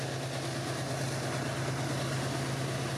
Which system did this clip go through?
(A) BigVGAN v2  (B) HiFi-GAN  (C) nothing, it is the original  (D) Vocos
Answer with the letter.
C